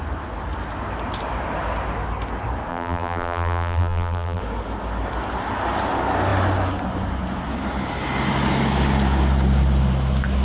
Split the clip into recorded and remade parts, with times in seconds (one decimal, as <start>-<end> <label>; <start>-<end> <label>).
0.0-2.7 recorded; 2.7-4.4 remade; 4.4-10.4 recorded